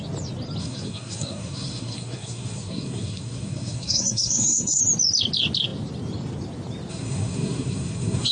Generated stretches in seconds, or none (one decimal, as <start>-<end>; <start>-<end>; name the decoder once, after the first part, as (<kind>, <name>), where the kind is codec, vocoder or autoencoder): 0.6-4.8 (codec, SNAC); 6.9-8.3